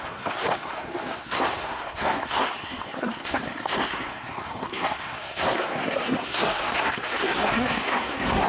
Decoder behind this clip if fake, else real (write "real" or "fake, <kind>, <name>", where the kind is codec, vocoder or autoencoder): fake, codec, SNAC